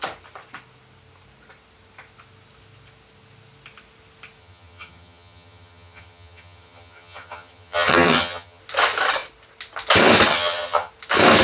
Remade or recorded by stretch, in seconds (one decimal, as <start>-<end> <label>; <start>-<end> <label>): 0.0-4.4 recorded; 4.4-8.6 remade; 8.6-10.3 recorded; 10.3-10.9 remade; 10.9-11.4 recorded